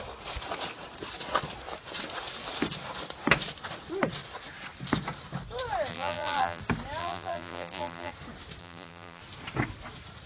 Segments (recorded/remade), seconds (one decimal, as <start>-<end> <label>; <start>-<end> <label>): 0.0-5.9 recorded; 5.9-6.6 remade; 6.6-7.0 recorded; 7.0-8.1 remade; 8.1-8.6 recorded; 8.6-9.2 remade; 9.2-10.3 recorded